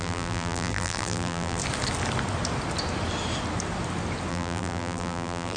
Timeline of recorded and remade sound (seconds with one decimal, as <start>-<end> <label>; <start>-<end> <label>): 0.0-1.6 remade; 1.6-4.3 recorded; 4.3-5.6 remade